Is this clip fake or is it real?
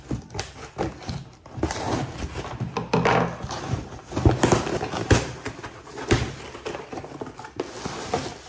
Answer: real